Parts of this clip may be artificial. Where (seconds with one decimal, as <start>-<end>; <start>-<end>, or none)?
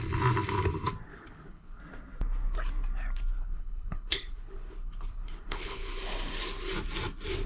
1.1-1.8; 3.3-5.9